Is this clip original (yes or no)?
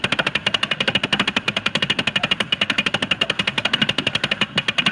yes